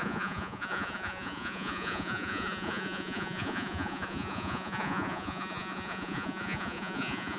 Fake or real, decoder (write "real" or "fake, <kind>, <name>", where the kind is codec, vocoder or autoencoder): fake, vocoder, Vocos